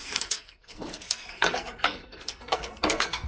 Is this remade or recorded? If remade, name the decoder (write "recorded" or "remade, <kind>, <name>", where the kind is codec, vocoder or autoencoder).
remade, codec, SNAC